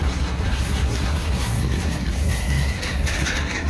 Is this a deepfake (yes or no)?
yes